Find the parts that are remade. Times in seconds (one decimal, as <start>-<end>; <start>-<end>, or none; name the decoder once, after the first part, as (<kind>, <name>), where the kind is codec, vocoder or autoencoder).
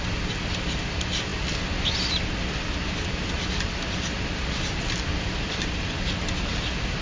none